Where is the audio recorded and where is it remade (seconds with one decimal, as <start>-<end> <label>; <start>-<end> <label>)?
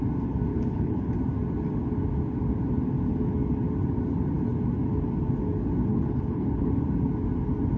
0.0-0.5 recorded; 0.5-1.1 remade; 1.1-5.9 recorded; 5.9-6.7 remade; 6.7-7.8 recorded